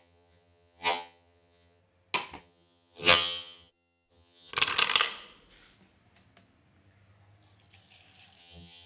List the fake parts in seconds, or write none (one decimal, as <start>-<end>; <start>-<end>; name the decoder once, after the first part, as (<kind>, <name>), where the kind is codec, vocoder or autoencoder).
0.0-1.8 (vocoder, HiFi-GAN); 2.4-4.5; 8.4-8.9